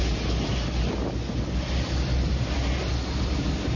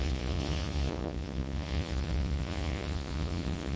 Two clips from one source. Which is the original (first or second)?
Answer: first